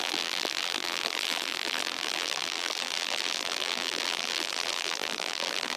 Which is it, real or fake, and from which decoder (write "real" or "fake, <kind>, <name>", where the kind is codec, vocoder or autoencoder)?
fake, vocoder, BigVGAN v2